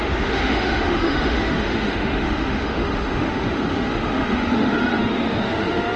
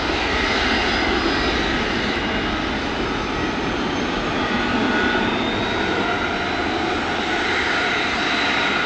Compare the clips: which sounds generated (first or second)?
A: first